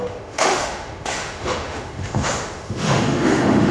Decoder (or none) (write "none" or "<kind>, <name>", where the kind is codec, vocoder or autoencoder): autoencoder, DAC-VAE